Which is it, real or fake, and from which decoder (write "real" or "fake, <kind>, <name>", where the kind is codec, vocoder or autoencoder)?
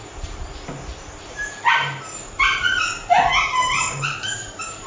fake, vocoder, BigVGAN v2